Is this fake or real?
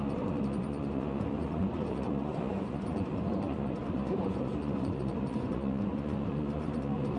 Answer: fake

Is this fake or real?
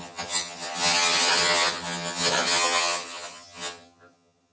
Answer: fake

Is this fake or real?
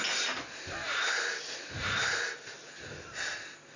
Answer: real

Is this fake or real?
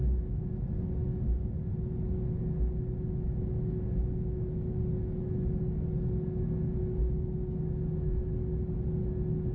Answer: real